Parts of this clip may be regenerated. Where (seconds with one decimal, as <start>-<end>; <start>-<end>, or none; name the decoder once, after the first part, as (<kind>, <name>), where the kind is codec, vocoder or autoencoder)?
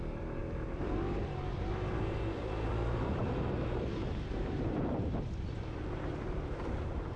0.0-7.2 (vocoder, BigVGAN v2)